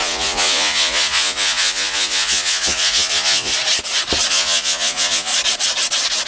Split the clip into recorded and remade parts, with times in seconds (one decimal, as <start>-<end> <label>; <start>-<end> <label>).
0.0-3.5 remade; 3.5-4.3 recorded; 4.3-5.3 remade; 5.3-6.3 recorded